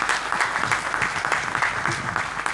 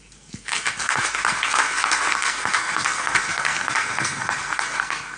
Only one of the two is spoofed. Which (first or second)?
second